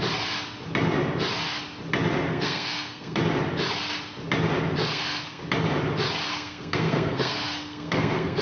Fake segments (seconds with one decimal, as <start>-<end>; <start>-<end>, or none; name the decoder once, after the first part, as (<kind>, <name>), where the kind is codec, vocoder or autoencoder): 2.3-3.2 (codec, SNAC); 4.8-5.4; 6.3-8.4